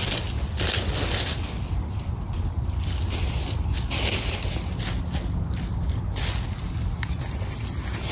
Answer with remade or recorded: recorded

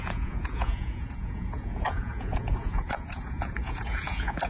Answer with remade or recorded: remade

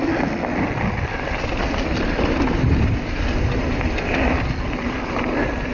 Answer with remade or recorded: recorded